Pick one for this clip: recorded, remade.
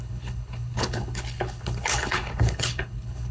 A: remade